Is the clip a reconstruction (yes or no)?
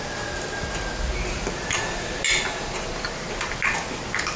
no